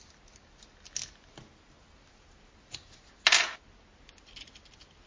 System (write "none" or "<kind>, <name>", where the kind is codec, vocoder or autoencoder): none